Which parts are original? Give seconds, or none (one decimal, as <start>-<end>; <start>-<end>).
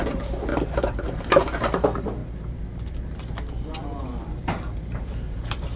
0.0-0.5; 1.3-2.2